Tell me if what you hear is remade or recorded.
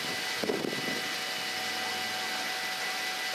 recorded